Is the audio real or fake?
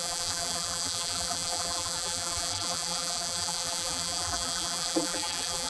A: fake